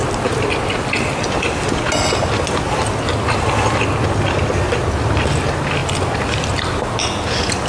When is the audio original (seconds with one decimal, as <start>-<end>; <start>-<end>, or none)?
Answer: 0.0-7.7